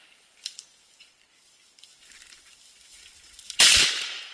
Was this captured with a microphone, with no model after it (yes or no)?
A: no